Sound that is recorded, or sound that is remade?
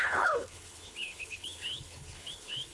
remade